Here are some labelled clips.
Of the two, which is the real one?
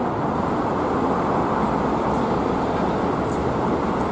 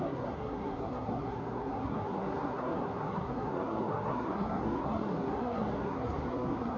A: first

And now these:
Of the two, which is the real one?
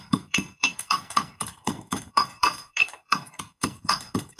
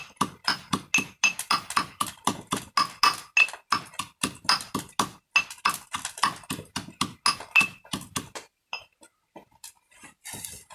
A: second